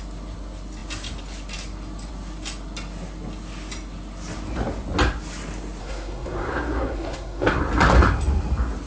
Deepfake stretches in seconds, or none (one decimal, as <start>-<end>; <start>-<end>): 5.8-7.6